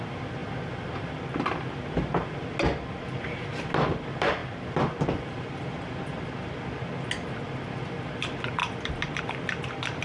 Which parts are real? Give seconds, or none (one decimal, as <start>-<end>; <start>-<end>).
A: 0.0-0.4; 1.2-10.0